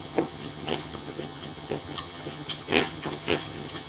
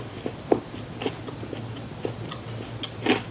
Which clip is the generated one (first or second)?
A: first